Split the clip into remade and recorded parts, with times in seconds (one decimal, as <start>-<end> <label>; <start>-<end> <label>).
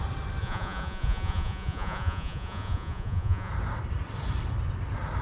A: 0.0-0.4 recorded; 0.4-3.5 remade; 3.5-5.2 recorded